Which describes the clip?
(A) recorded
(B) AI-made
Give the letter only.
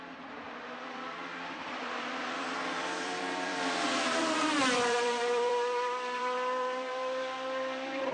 B